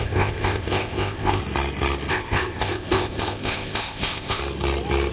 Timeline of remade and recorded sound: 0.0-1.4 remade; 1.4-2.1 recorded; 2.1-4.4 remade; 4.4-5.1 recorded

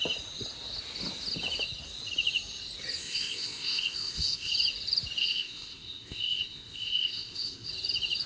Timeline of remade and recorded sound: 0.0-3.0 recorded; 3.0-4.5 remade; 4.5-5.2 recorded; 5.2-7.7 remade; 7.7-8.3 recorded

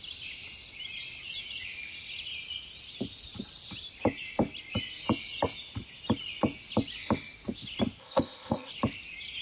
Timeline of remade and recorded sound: 0.0-8.0 recorded; 8.0-8.7 remade; 8.7-9.4 recorded